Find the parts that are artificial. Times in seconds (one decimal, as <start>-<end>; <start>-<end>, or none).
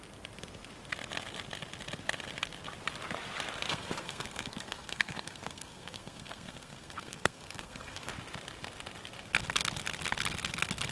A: 3.7-8.1